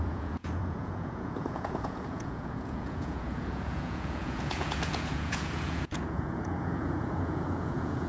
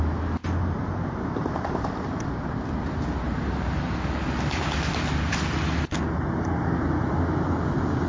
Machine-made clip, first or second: first